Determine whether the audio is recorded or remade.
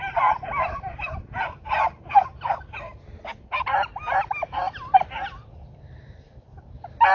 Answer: recorded